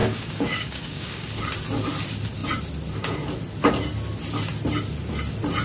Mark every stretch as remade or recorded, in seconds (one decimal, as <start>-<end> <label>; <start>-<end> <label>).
0.0-1.3 remade; 1.3-5.6 recorded